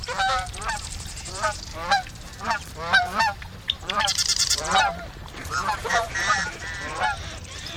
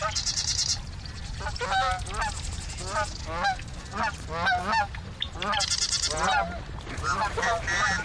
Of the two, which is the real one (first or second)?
second